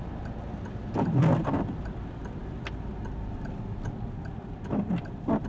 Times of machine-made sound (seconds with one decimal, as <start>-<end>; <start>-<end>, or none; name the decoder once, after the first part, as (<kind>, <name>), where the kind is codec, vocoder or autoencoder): none